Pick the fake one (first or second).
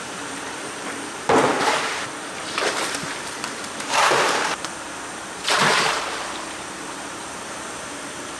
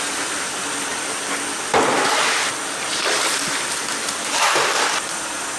first